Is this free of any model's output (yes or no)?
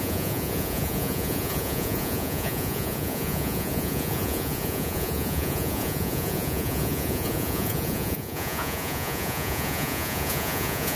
no